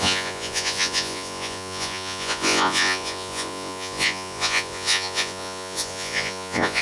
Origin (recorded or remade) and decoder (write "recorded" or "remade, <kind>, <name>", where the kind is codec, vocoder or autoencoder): remade, vocoder, Vocos